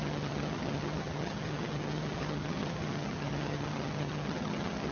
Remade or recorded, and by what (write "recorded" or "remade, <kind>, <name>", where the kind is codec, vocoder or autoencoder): remade, vocoder, HiFi-GAN